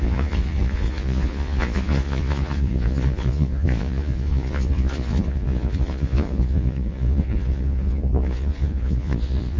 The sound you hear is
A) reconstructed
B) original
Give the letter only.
A